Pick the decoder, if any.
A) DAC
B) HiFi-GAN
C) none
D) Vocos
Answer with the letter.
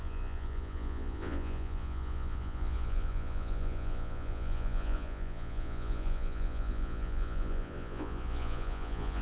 D